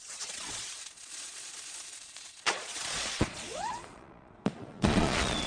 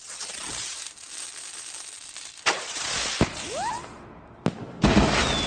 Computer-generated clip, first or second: first